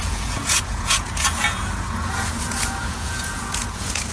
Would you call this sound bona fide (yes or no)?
no